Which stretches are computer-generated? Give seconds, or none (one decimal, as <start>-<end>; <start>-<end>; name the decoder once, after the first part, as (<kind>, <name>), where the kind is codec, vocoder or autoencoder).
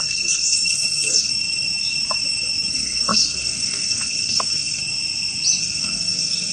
0.0-1.3 (codec, SNAC); 2.7-4.8; 5.6-6.5